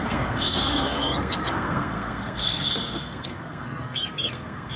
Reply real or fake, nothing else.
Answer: fake